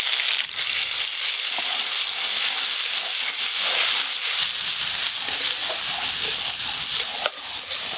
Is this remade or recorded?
recorded